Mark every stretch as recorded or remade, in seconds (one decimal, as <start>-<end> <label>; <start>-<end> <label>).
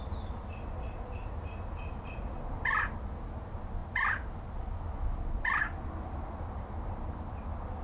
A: 0.0-7.8 recorded